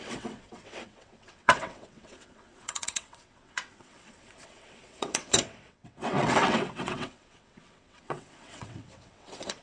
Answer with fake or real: fake